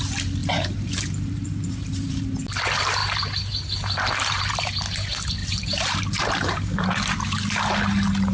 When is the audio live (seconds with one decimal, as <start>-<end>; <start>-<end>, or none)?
0.0-0.4; 2.3-5.4; 6.9-8.3